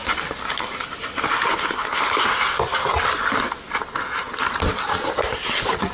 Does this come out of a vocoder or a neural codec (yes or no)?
no